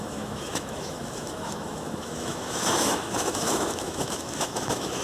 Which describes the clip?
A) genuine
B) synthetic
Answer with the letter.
B